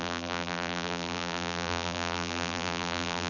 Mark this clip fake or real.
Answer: fake